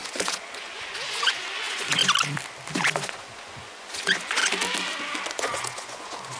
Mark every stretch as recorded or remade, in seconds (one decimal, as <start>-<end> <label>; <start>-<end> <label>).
0.0-2.0 remade; 2.0-2.7 recorded; 2.7-4.4 remade; 4.4-5.3 recorded; 5.3-6.4 remade